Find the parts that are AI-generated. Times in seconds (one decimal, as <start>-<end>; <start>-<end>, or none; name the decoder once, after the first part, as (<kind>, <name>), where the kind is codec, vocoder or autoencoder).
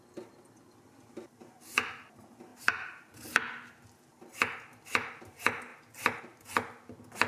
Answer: none